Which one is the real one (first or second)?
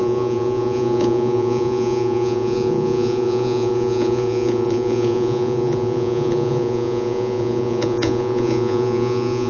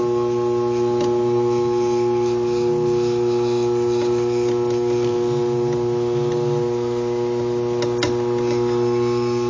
second